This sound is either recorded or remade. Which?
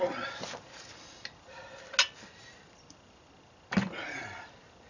recorded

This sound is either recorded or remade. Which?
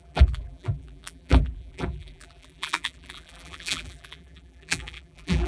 remade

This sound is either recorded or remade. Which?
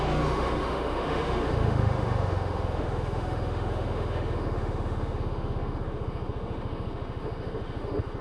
remade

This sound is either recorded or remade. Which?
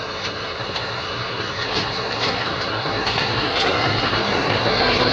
remade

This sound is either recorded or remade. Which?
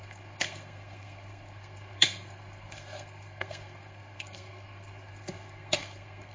remade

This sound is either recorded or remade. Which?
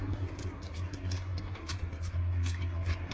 remade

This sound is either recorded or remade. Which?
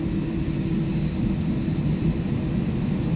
recorded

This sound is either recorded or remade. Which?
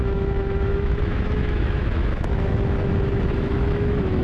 remade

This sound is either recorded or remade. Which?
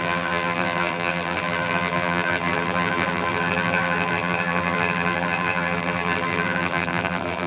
remade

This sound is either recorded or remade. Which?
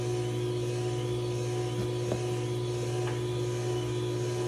recorded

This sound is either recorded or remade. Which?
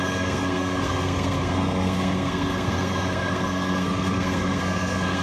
remade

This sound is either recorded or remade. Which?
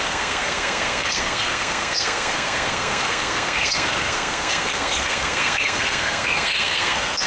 remade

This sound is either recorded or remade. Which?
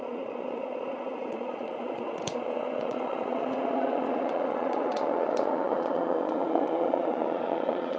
remade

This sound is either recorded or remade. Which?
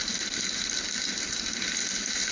recorded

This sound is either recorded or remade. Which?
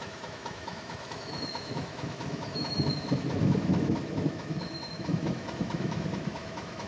remade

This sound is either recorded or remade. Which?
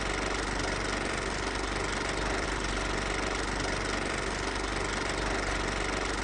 recorded